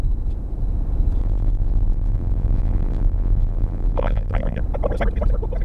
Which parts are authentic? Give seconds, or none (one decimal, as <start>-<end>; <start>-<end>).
0.0-1.2; 4.6-5.6